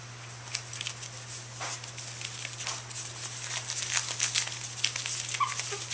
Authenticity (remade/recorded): recorded